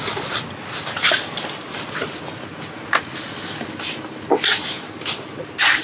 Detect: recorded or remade recorded